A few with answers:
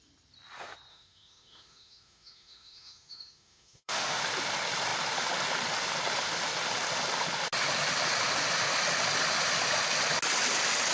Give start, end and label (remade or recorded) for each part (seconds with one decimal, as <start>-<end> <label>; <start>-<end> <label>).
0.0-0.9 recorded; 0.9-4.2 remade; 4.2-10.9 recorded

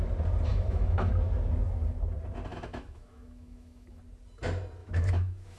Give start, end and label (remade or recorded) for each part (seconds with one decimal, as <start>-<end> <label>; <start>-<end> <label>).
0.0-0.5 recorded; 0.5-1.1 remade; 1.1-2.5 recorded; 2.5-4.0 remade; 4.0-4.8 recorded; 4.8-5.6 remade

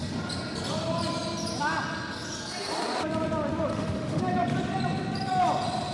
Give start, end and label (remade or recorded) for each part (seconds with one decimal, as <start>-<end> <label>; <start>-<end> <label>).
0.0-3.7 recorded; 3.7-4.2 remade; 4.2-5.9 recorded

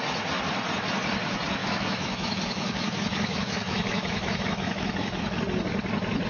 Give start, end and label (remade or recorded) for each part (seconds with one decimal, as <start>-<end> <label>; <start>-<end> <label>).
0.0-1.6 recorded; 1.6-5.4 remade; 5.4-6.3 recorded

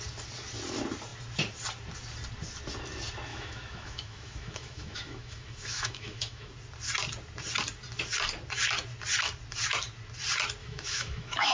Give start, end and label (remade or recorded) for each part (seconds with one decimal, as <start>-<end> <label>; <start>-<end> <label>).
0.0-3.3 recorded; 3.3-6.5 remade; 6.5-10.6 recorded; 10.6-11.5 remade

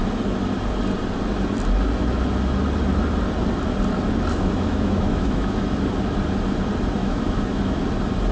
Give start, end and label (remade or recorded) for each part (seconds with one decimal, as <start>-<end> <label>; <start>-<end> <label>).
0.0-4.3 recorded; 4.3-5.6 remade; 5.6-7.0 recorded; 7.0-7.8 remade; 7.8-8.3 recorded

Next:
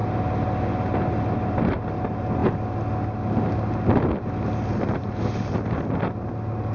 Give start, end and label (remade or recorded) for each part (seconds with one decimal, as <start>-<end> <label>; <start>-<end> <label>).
0.0-6.7 recorded